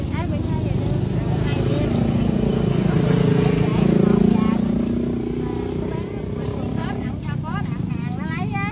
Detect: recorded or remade recorded